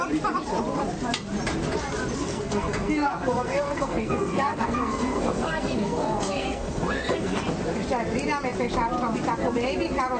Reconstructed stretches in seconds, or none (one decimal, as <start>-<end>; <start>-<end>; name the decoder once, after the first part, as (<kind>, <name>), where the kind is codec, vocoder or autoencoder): 2.2-7.4 (codec, SNAC)